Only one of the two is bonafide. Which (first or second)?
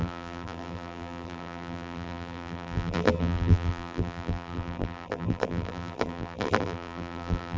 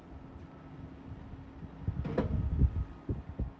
second